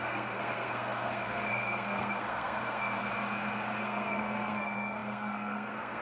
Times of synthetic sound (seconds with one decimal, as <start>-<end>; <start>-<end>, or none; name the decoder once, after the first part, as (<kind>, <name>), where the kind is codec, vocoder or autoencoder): 0.0-3.1 (codec, SNAC); 3.8-6.0